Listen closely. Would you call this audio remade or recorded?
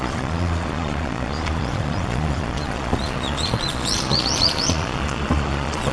remade